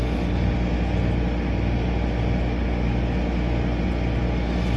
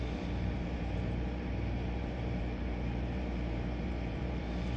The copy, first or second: second